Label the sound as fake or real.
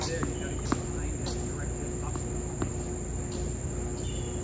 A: real